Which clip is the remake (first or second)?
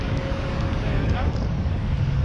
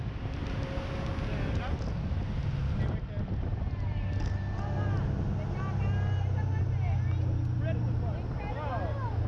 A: first